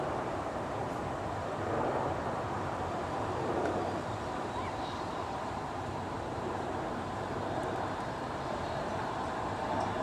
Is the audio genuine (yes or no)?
no